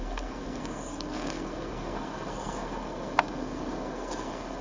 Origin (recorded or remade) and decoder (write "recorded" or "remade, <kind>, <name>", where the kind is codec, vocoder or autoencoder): remade, codec, SNAC